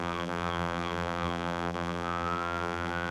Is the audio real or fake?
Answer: fake